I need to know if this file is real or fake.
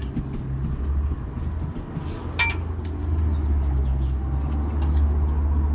real